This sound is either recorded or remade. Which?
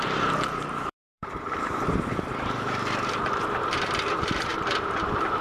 remade